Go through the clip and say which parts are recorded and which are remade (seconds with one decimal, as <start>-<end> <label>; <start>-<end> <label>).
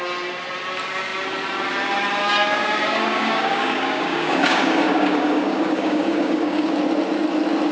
0.0-2.2 recorded; 2.2-6.7 remade; 6.7-7.7 recorded